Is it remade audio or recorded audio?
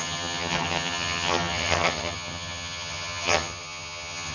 remade